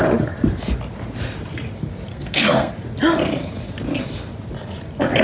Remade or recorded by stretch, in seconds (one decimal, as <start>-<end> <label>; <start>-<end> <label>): 0.0-2.1 recorded; 2.1-2.7 remade; 2.7-5.2 recorded